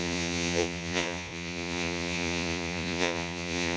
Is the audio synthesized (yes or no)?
yes